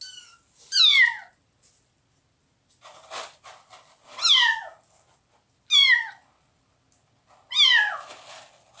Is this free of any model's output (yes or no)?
yes